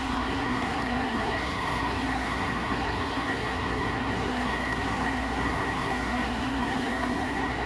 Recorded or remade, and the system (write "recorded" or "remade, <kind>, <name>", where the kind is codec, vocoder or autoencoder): remade, codec, SNAC